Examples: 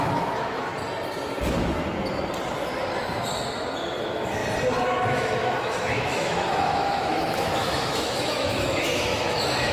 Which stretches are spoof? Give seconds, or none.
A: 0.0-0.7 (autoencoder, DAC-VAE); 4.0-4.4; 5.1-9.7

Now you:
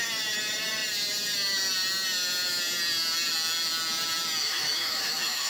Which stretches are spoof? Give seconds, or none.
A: 4.4-5.5 (autoencoder, DAC-VAE)

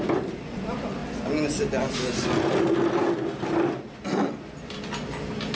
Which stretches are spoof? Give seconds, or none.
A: none

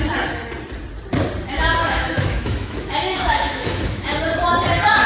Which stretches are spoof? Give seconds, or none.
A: 1.8-4.2 (autoencoder, DAC-VAE)

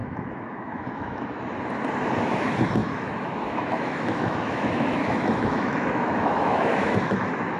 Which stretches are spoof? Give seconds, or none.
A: 0.0-1.4 (autoencoder, DAC-VAE); 2.8-7.6

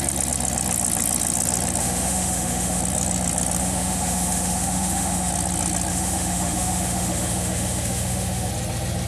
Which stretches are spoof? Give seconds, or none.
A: 1.8-2.8 (autoencoder, DAC-VAE); 3.6-5.3; 5.9-8.5

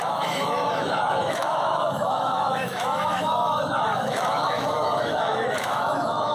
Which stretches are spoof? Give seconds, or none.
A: 0.0-6.3 (autoencoder, DAC-VAE)

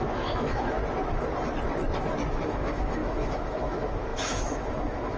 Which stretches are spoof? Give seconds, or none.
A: 0.0-0.8 (autoencoder, DAC-VAE); 2.3-5.2